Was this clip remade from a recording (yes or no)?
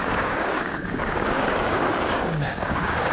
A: yes